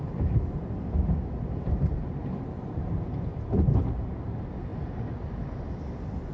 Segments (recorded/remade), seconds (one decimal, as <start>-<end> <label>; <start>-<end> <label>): 0.0-3.3 recorded; 3.3-3.8 remade; 3.8-6.3 recorded